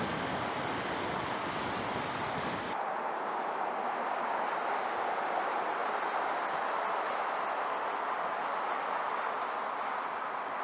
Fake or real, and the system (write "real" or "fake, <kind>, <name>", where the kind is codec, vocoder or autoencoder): real